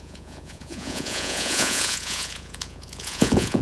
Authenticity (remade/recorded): remade